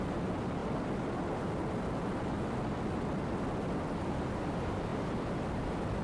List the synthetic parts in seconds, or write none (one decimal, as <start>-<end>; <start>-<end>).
none